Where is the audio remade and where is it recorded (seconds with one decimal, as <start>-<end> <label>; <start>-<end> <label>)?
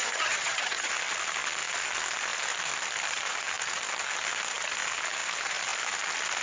0.0-0.9 remade; 0.9-6.4 recorded